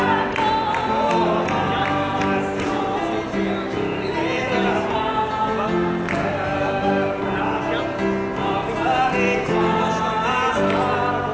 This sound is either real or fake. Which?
real